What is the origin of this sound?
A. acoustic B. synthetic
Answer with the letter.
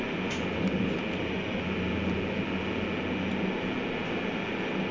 A